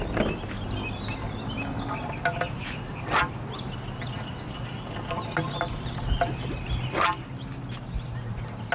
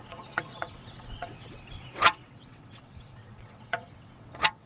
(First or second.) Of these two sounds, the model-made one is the second